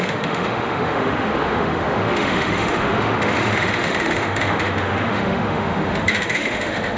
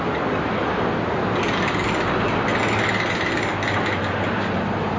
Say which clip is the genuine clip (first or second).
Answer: second